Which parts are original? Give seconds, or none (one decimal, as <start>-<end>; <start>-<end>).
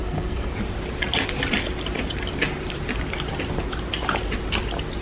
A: 0.5-5.0